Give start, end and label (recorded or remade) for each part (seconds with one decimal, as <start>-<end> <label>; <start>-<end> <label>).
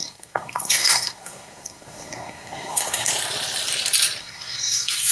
0.0-3.1 remade; 3.1-4.2 recorded; 4.2-5.1 remade